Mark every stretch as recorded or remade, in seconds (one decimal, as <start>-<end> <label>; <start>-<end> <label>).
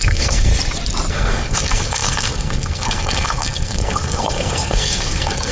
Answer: 0.0-0.5 remade; 0.5-1.1 recorded; 1.1-5.5 remade